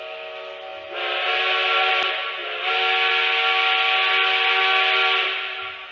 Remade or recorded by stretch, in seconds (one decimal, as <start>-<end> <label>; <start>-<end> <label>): 0.0-5.9 recorded